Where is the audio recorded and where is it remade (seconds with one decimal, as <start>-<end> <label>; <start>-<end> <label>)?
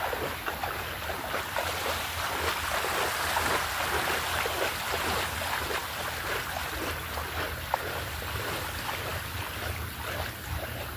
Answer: 0.0-11.0 recorded